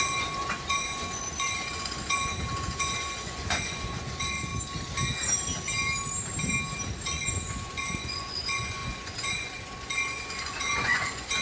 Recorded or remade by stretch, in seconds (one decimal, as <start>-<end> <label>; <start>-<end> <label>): 0.0-4.5 remade; 4.5-7.0 recorded; 7.0-11.4 remade